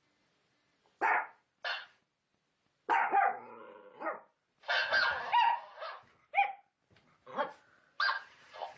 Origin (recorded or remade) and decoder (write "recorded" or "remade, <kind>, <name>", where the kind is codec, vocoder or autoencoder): recorded